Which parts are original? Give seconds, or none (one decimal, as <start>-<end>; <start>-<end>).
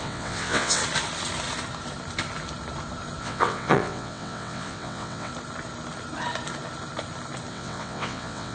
0.8-3.2; 5.3-7.5